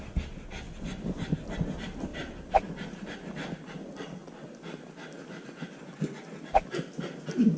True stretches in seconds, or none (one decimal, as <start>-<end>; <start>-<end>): 0.0-7.6